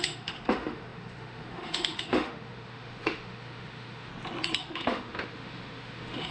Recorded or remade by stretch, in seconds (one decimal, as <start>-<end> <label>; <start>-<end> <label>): 0.0-4.1 remade; 4.1-4.6 recorded; 4.6-6.3 remade

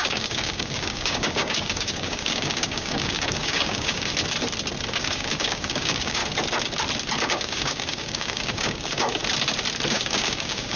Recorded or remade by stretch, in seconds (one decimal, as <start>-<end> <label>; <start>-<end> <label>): 0.0-4.1 remade; 4.1-5.0 recorded; 5.0-6.2 remade; 6.2-7.2 recorded; 7.2-9.2 remade; 9.2-9.9 recorded; 9.9-10.8 remade

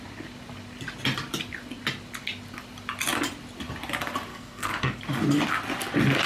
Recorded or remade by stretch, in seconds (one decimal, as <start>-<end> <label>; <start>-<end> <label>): 0.0-4.3 recorded; 4.3-5.0 remade; 5.0-6.3 recorded